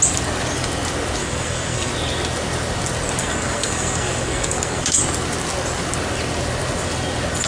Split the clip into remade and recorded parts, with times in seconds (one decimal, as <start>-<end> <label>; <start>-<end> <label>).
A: 0.0-1.2 recorded; 1.2-1.9 remade; 1.9-3.2 recorded; 3.2-5.0 remade; 5.0-7.5 recorded